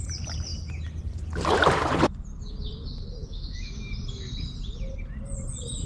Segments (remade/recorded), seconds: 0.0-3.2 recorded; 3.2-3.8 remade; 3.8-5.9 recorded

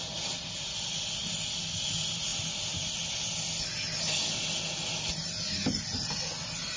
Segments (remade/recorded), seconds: 0.0-6.8 recorded

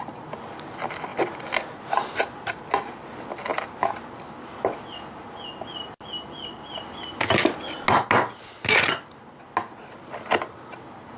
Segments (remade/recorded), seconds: 0.0-11.2 recorded